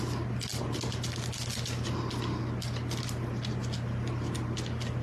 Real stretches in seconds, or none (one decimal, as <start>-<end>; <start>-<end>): 0.0-5.0